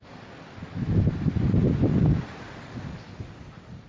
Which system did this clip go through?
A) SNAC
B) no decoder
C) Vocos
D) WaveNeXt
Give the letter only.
B